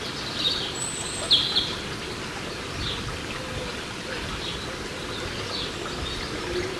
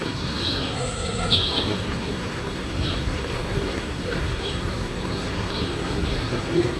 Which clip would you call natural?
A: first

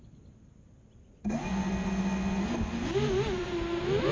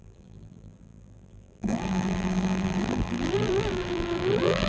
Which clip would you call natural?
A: first